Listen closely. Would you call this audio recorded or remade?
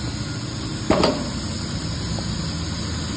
recorded